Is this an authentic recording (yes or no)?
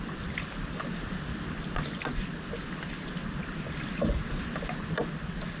yes